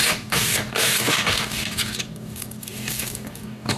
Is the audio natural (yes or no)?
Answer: no